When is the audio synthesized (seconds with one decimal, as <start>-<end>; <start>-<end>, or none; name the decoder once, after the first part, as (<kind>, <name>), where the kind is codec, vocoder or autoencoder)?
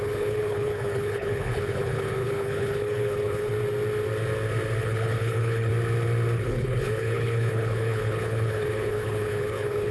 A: 0.0-3.5 (codec, HILCodec); 4.8-5.7; 6.4-9.9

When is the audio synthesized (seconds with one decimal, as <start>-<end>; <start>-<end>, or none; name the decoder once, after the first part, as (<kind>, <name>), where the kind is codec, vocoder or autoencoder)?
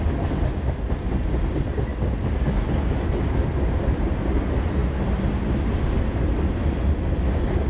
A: none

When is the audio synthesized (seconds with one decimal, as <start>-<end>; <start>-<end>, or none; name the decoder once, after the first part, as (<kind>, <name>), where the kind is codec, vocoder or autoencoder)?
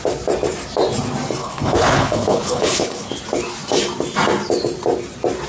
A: 1.4-3.1 (codec, HILCodec)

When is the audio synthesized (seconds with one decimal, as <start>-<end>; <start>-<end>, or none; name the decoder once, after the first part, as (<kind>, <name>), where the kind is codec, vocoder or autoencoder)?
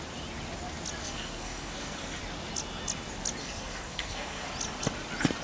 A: 1.0-2.2 (codec, SNAC); 3.4-4.5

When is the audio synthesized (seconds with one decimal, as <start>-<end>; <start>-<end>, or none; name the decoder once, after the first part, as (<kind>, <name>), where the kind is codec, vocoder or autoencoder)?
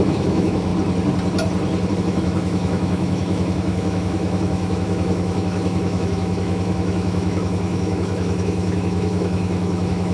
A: 0.0-0.7 (autoencoder, DAC-VAE); 2.0-10.1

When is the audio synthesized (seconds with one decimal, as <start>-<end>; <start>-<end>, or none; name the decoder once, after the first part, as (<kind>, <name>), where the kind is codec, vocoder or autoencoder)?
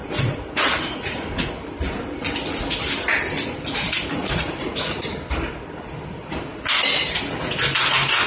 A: 0.0-1.5 (vocoder, Vocos); 4.2-5.0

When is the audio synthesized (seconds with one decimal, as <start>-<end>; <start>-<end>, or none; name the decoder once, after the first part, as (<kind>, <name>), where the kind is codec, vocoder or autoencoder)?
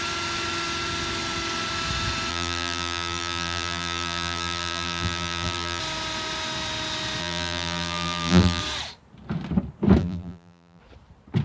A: 2.3-5.8 (vocoder, BigVGAN v2); 7.2-8.6; 10.0-10.8